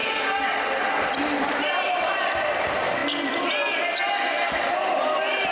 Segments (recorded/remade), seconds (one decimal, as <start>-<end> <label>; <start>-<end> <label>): 0.0-5.5 recorded

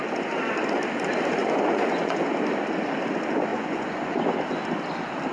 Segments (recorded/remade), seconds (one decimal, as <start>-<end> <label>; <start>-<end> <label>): 0.0-1.4 recorded; 1.4-2.2 remade; 2.2-3.5 recorded; 3.5-4.2 remade; 4.2-5.3 recorded

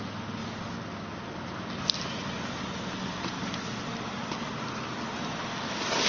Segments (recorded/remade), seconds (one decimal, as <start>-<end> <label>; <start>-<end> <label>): 0.0-6.1 recorded

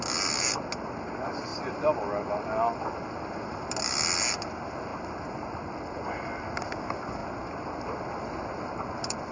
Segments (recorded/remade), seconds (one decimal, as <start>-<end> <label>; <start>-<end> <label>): 0.0-9.3 recorded

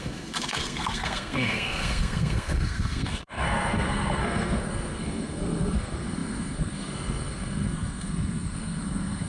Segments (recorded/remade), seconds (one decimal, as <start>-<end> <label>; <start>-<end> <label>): 0.0-9.3 remade

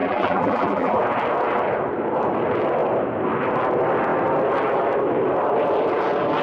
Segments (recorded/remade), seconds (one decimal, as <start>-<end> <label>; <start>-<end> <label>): 0.0-1.0 remade; 1.0-6.4 recorded